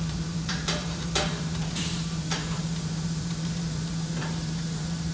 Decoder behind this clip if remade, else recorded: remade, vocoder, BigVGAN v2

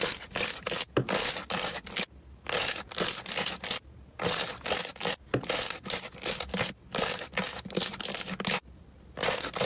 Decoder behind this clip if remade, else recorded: recorded